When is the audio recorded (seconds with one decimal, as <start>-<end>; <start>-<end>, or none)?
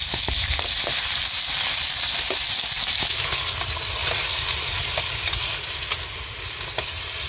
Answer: 0.0-7.3